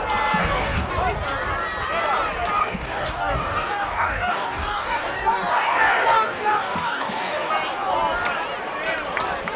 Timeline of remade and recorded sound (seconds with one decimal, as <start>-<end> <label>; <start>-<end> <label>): 0.0-0.4 recorded; 0.4-0.9 remade; 0.9-2.6 recorded; 2.6-7.5 remade; 7.5-9.6 recorded